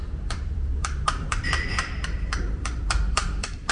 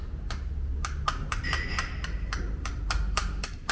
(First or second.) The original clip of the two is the second